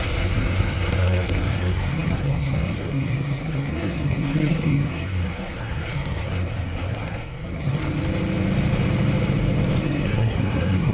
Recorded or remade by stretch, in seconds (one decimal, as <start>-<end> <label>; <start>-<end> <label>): 0.0-7.8 remade; 7.8-9.8 recorded; 9.8-10.9 remade